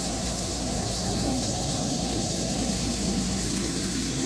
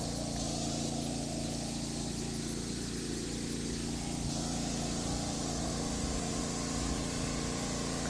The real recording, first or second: second